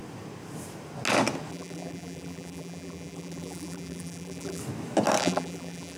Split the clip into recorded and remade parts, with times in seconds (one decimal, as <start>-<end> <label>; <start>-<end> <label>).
0.0-1.5 recorded; 1.5-4.6 remade; 4.6-5.2 recorded; 5.2-6.0 remade